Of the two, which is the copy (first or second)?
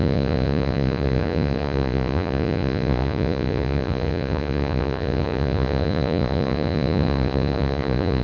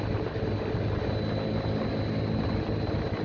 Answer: first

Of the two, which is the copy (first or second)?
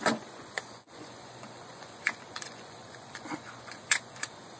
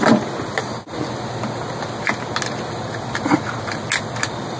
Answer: first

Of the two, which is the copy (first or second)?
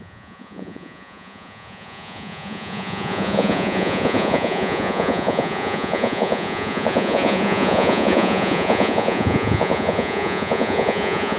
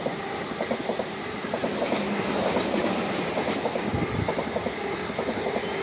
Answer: first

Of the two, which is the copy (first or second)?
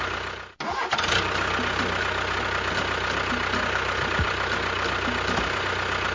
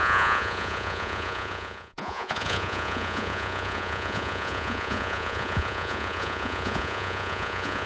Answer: second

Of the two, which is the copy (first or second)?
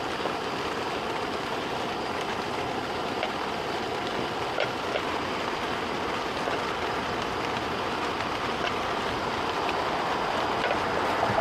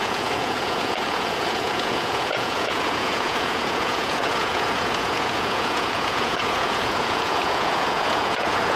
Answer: second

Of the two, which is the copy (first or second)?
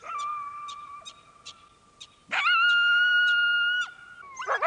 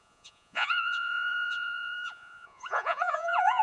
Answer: second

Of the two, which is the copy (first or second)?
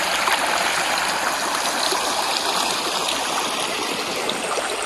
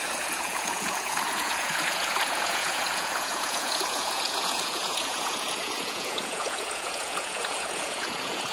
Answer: second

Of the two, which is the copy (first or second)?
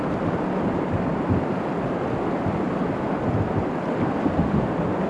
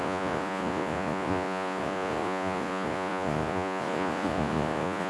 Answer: second